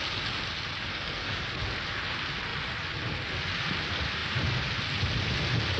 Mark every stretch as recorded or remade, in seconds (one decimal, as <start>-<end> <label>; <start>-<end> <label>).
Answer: 0.0-0.9 recorded; 0.9-1.4 remade; 1.4-5.8 recorded